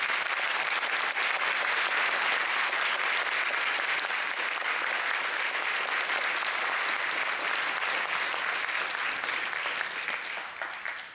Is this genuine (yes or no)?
yes